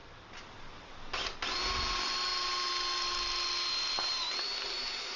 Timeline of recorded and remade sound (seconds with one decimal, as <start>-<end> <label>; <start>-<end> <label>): 0.0-5.2 recorded